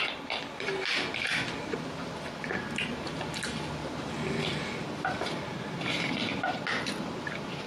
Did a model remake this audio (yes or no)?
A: no